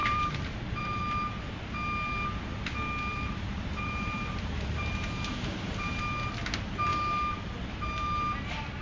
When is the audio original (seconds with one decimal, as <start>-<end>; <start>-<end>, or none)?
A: 1.0-3.1; 6.0-8.8